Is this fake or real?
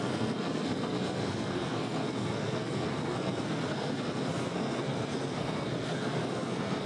fake